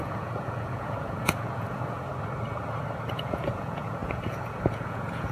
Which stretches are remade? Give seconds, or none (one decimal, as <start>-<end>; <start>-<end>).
0.0-2.1; 3.1-5.3